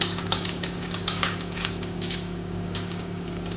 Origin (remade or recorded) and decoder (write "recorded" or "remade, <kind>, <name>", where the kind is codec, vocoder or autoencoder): remade, codec, DAC